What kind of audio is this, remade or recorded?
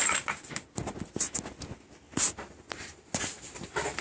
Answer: recorded